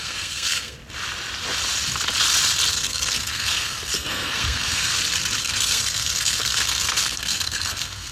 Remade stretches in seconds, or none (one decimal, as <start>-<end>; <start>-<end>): 0.0-0.8; 2.7-4.9; 5.4-8.1